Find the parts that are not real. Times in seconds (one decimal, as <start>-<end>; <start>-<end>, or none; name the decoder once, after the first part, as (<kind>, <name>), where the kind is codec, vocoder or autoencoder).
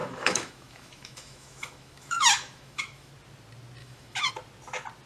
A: 0.0-3.1 (autoencoder, DAC-VAE); 3.8-4.3